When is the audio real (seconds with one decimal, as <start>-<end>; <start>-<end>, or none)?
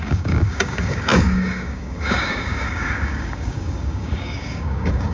none